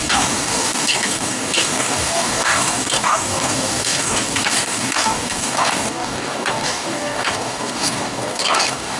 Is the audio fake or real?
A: fake